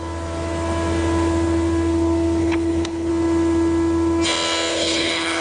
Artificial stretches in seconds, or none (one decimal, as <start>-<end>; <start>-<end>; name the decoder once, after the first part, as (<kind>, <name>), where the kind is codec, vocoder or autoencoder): 2.4-3.1 (codec, HILCodec); 4.7-5.4